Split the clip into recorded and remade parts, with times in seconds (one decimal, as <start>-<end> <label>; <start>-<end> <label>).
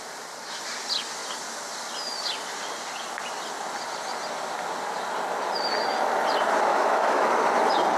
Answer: 0.0-6.7 recorded; 6.7-7.3 remade; 7.3-8.0 recorded